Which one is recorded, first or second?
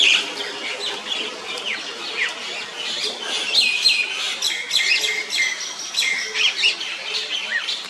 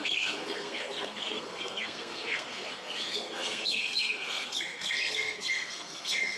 first